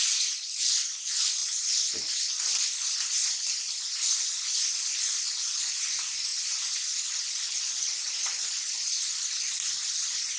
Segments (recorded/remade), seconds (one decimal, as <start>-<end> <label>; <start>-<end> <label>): 0.0-10.4 recorded